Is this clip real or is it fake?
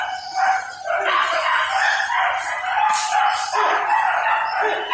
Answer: real